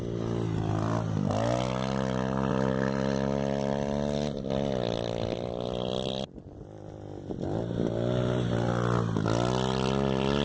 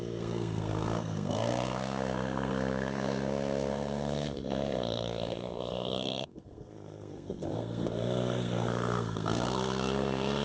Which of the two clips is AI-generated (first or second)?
second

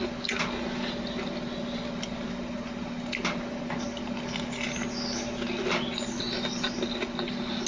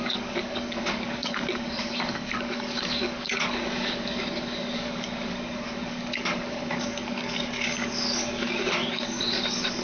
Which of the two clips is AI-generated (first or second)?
second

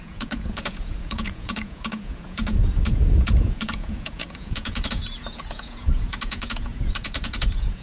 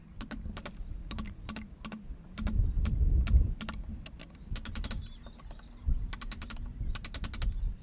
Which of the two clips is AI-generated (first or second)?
first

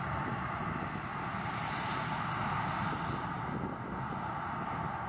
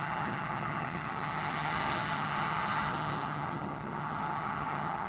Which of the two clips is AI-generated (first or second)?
second